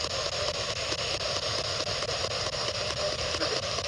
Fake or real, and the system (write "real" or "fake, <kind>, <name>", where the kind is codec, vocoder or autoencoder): real